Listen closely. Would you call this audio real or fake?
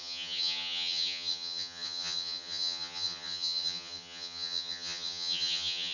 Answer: fake